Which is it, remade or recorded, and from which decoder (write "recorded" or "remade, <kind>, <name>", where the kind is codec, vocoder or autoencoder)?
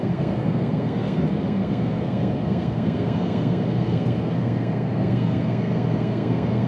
remade, codec, SNAC